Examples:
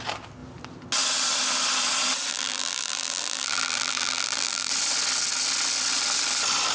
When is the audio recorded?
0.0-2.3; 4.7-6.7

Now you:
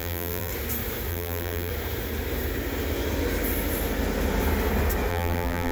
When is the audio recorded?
0.5-1.1; 1.7-5.1

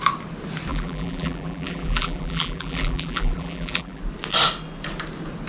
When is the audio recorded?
0.0-0.7; 4.0-5.5

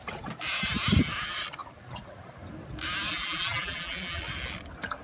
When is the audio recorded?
0.0-3.1; 4.2-5.0

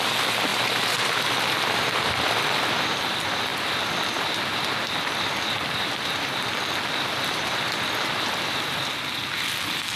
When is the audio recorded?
0.0-0.5; 2.9-10.0